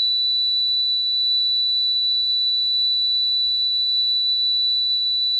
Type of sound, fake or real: fake